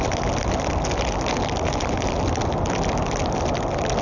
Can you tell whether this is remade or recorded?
recorded